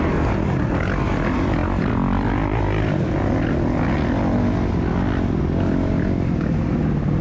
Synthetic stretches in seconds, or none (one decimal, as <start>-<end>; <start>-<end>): none